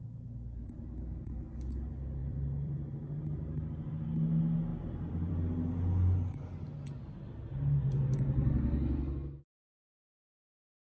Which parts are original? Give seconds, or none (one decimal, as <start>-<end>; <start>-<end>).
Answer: 0.0-2.2; 3.2-4.7; 5.3-10.8